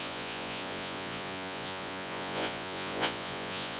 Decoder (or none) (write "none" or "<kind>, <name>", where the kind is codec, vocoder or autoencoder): vocoder, Vocos